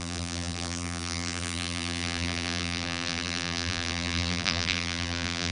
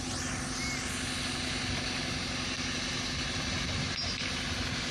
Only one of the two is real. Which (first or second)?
second